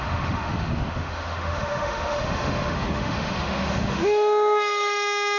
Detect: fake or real fake